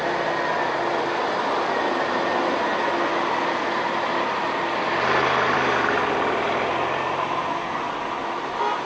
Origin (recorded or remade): recorded